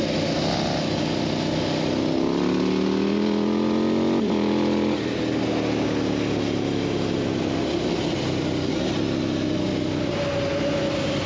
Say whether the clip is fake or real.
real